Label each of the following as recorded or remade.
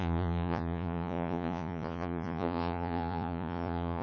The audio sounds remade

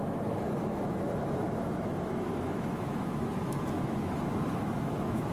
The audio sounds remade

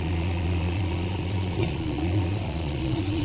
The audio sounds remade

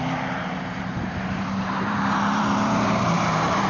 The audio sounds remade